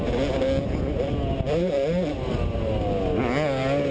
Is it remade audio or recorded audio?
recorded